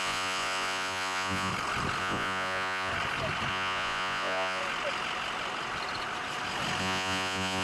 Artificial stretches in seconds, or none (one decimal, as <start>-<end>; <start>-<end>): 0.0-1.5; 2.0-2.9; 3.5-4.6; 6.8-7.6